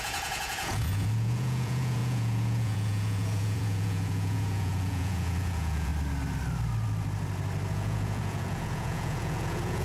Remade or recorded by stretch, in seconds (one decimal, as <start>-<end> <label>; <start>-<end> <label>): 0.0-5.9 remade; 5.9-7.7 recorded; 7.7-9.8 remade

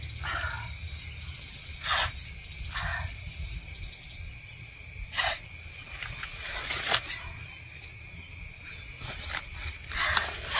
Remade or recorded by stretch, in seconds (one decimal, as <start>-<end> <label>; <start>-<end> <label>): 0.0-6.2 recorded; 6.2-6.9 remade; 6.9-10.6 recorded

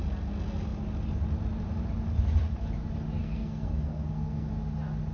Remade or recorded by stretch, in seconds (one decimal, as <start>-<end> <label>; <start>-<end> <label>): 0.0-3.2 recorded; 3.2-4.5 remade; 4.5-5.1 recorded

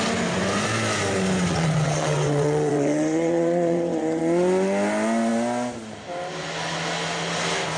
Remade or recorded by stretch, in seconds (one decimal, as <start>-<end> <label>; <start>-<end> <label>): 0.0-1.5 recorded; 1.5-4.2 remade; 4.2-7.8 recorded

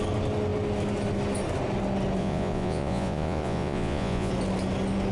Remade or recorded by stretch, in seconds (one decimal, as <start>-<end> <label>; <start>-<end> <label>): 0.0-2.2 recorded; 2.2-4.3 remade; 4.3-5.1 recorded

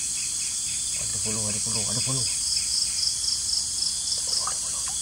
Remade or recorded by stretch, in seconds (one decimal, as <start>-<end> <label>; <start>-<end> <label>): 0.0-5.0 recorded